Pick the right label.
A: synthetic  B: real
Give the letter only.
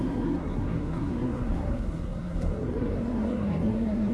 A